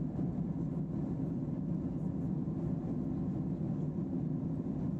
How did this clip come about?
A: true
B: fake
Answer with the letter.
A